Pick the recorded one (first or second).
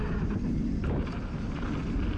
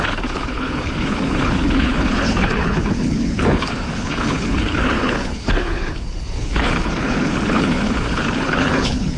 first